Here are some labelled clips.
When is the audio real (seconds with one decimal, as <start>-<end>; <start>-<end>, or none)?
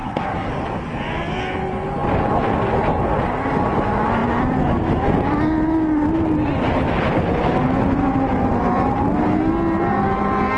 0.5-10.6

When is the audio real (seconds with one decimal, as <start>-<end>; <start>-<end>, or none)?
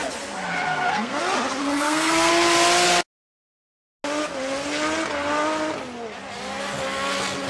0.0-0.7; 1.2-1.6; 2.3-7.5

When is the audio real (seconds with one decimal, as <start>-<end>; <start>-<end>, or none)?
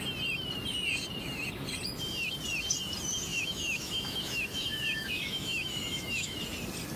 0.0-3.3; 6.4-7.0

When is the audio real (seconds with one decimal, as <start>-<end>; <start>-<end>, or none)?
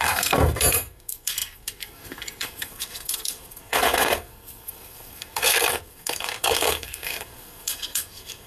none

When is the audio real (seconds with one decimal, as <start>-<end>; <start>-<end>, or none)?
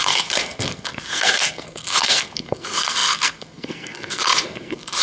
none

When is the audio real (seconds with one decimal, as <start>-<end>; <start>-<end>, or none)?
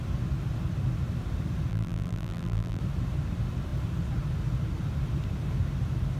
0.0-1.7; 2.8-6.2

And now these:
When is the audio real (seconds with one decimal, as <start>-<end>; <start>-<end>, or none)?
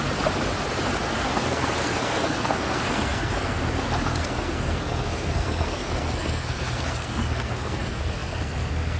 0.0-1.0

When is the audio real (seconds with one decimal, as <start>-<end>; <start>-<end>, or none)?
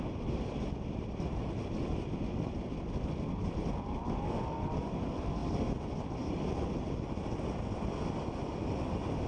0.0-9.3